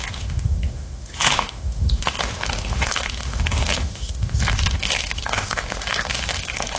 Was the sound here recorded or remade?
remade